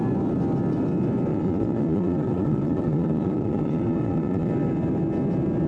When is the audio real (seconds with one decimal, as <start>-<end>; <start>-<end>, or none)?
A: 0.0-1.3; 4.5-5.7